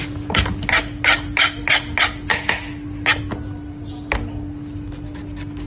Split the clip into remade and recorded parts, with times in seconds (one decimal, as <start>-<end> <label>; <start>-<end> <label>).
0.0-5.7 recorded